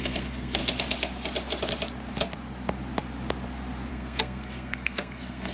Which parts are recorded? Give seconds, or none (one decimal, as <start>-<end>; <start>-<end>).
0.6-3.9